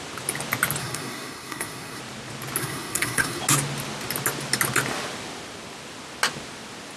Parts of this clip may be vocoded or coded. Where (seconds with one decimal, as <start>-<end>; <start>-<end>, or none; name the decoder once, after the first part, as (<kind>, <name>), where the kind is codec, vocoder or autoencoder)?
0.8-2.0 (codec, SNAC); 2.6-3.4